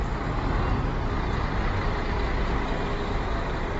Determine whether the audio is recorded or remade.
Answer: recorded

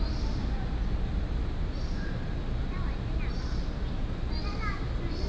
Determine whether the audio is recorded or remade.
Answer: recorded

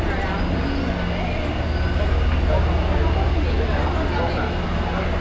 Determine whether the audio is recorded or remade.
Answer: recorded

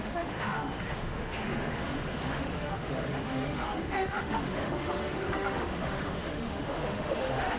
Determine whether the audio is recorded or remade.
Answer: remade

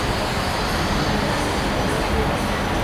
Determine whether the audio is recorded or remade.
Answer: recorded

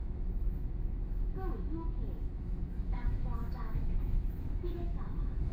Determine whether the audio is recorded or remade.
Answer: remade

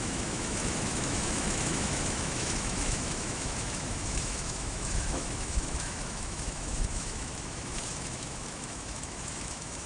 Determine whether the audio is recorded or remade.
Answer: remade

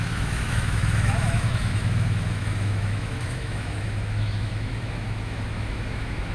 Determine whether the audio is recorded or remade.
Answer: remade